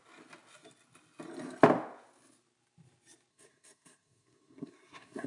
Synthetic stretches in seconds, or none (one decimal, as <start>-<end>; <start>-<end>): 3.3-5.3